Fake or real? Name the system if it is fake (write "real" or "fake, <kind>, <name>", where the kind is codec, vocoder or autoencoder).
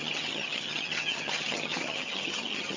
fake, vocoder, HiFi-GAN